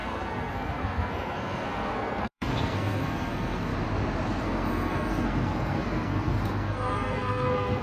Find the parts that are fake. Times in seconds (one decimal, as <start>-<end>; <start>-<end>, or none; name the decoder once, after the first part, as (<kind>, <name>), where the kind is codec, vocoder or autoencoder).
0.0-3.7 (codec, SNAC); 4.4-7.8

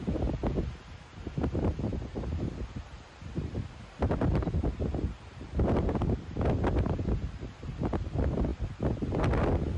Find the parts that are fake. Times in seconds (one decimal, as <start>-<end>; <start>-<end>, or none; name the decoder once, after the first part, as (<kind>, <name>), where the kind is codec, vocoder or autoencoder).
none

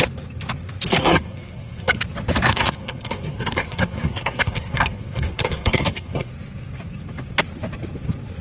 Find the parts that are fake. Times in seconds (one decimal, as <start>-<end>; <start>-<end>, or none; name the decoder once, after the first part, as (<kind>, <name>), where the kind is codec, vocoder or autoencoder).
0.9-2.0 (codec, SNAC); 2.5-6.3

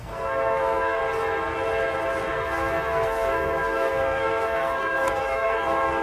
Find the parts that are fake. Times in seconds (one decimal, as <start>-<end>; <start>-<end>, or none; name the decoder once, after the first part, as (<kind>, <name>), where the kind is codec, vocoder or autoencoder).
0.0-1.0 (codec, SNAC); 2.3-6.0

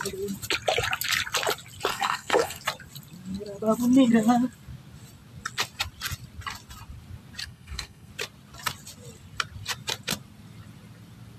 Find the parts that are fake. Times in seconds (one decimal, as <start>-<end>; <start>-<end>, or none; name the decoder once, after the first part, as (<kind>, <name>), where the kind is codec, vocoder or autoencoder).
1.9-2.6 (codec, SNAC); 7.4-8.1

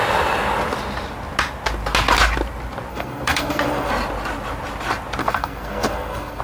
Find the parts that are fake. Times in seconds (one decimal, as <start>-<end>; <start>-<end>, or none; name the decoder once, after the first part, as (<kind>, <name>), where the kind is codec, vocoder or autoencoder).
2.9-3.9 (codec, SNAC); 5.2-6.4